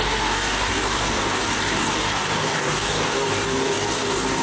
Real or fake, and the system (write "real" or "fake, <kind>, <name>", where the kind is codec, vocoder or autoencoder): fake, codec, DAC